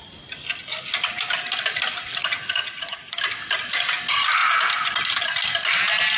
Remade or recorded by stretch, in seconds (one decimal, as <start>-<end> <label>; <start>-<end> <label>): 0.0-2.6 recorded; 2.6-3.2 remade; 3.2-6.2 recorded